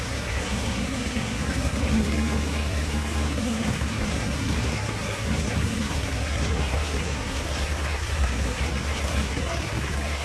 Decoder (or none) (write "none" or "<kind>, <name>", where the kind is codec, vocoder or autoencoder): codec, SNAC